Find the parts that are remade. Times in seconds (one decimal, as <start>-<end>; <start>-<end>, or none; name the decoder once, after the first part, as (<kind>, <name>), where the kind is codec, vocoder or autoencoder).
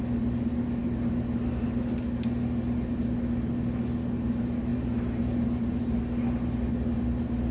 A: 4.7-6.0 (vocoder, BigVGAN v2)